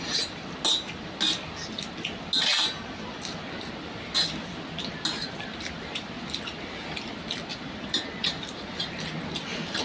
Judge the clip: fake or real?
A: real